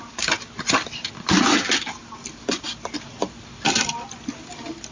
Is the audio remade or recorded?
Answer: recorded